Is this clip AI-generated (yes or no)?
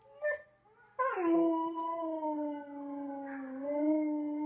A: no